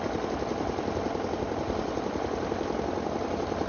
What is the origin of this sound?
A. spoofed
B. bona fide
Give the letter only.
B